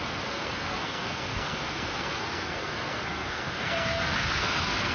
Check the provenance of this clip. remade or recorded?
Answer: remade